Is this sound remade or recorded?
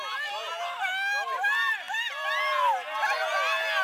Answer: recorded